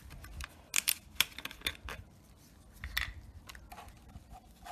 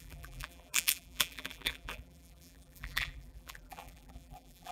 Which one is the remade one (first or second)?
second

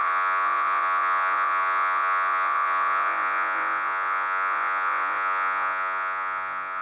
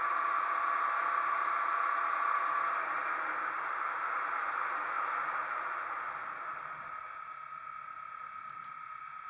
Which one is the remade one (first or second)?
first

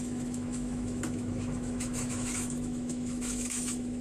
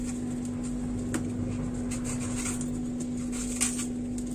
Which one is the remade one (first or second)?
first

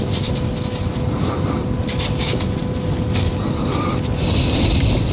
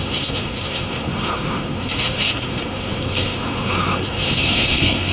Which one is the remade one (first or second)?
second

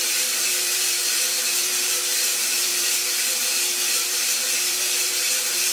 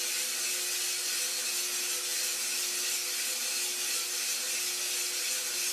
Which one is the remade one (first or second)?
first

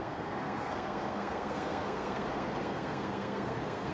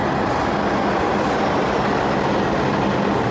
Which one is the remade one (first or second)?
first